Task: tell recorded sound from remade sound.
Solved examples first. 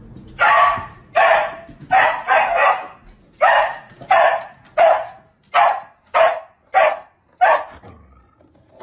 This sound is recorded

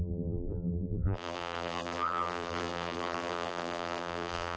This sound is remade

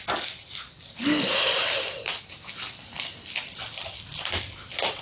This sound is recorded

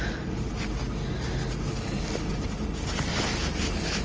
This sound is recorded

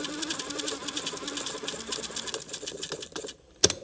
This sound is recorded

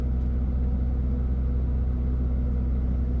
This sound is recorded